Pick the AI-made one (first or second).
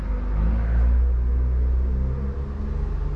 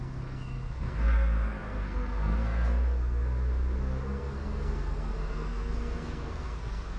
second